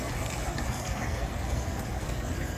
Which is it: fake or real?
fake